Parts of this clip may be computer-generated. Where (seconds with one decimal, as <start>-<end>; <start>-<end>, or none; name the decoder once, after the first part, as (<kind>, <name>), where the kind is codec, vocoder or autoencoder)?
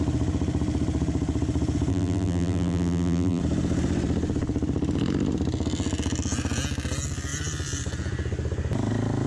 1.9-3.4 (vocoder, BigVGAN v2)